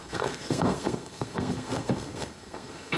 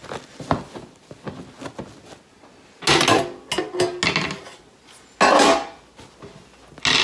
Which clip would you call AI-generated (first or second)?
first